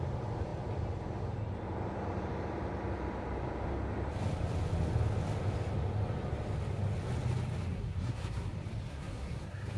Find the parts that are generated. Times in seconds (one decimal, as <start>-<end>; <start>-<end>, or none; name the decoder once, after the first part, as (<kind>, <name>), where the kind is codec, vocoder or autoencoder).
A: 7.7-8.5 (codec, SNAC); 8.9-9.8